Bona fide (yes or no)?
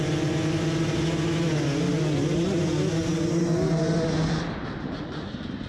yes